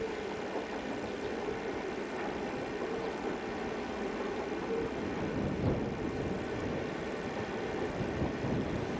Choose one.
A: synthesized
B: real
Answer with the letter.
B